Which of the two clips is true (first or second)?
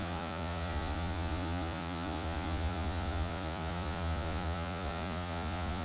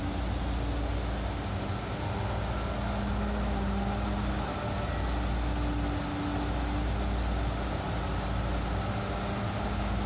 second